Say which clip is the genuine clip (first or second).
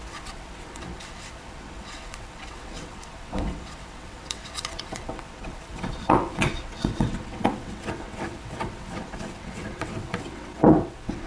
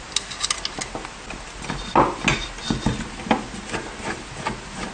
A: second